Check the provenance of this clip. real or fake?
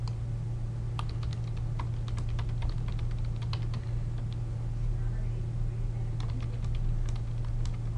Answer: real